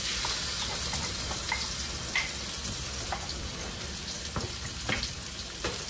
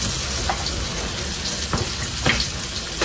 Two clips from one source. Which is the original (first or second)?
second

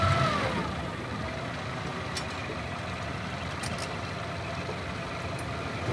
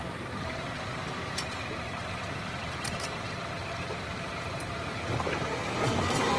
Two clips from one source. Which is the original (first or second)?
first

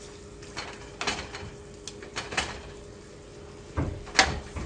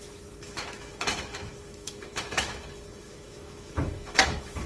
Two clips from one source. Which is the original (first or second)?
first